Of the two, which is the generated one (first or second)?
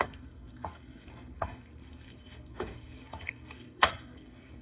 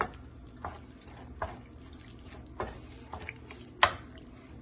first